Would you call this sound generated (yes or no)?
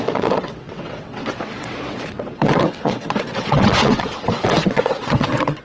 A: yes